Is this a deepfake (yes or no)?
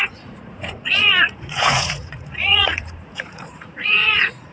yes